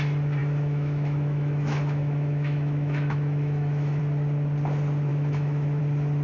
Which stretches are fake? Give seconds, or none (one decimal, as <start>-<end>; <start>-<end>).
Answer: 0.4-4.0; 5.1-5.8